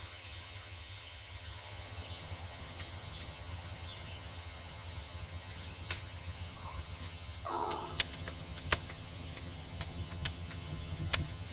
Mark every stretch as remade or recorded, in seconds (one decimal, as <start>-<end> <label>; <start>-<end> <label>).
0.0-11.5 remade